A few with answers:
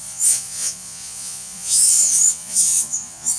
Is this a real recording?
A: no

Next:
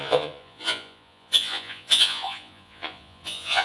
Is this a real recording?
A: no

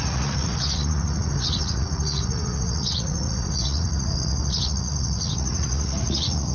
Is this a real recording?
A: no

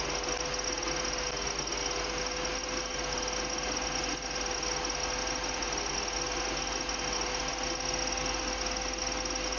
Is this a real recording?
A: yes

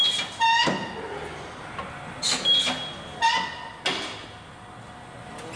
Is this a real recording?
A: yes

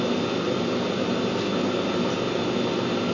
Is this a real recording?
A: yes